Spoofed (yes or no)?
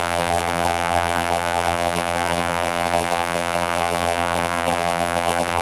yes